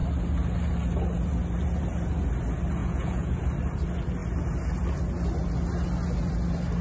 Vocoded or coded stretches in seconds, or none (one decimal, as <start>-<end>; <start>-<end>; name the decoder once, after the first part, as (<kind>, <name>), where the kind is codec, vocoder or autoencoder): 2.8-3.4 (vocoder, Vocos)